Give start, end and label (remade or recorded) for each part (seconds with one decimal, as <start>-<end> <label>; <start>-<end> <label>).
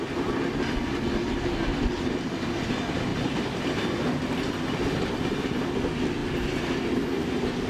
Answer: 0.0-7.7 recorded